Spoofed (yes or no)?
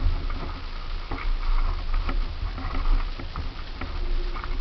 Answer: no